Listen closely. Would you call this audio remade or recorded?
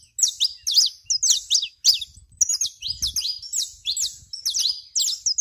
recorded